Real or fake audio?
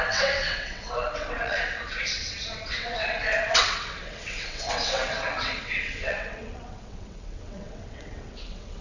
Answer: fake